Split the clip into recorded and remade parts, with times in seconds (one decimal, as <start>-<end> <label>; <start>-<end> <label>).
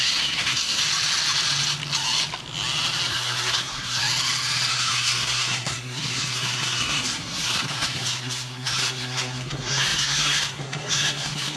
0.0-0.8 remade; 0.8-3.1 recorded; 3.1-4.0 remade; 4.0-4.7 recorded; 4.7-11.6 remade